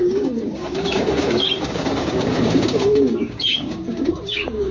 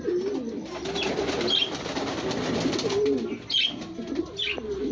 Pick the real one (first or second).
second